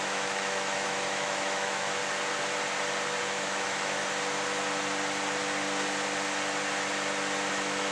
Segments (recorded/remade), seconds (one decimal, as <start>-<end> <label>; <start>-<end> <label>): 0.0-2.0 remade; 2.0-3.2 recorded; 3.2-4.0 remade; 4.0-7.5 recorded; 7.5-7.9 remade

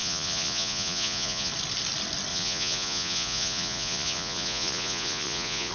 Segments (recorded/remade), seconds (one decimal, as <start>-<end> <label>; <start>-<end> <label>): 0.0-1.5 remade; 1.5-2.3 recorded; 2.3-5.7 remade

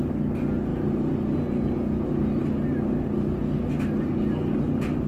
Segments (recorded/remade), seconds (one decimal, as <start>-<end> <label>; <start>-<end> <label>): 0.0-5.1 recorded

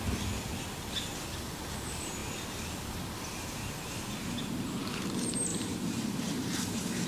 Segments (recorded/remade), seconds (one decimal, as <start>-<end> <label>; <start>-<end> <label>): 0.0-5.5 recorded; 5.5-7.1 remade

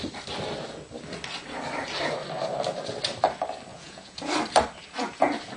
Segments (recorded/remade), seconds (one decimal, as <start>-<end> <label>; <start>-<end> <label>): 0.0-3.7 recorded; 3.7-4.2 remade; 4.2-5.6 recorded